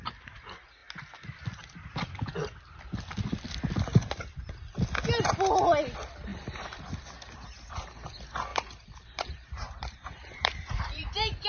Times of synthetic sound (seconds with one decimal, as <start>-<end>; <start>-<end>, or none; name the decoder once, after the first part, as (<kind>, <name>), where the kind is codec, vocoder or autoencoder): 6.3-6.9 (vocoder, BigVGAN v2); 8.5-11.5